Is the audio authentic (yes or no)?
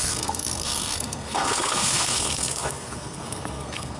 no